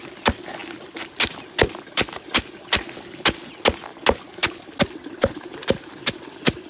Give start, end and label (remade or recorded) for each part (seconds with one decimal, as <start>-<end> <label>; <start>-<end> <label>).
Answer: 0.0-6.7 recorded